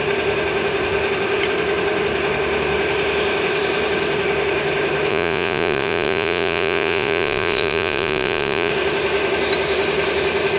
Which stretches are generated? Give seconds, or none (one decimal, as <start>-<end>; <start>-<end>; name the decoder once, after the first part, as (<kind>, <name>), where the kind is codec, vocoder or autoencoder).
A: 5.1-8.7 (vocoder, Vocos)